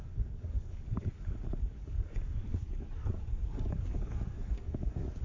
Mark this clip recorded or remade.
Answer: remade